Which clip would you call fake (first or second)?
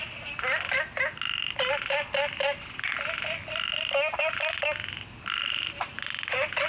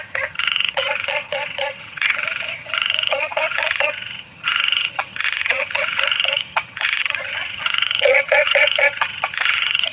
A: second